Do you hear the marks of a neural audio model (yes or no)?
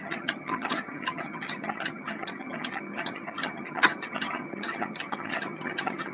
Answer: yes